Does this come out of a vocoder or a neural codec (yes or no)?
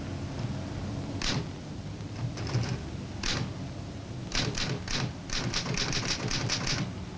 no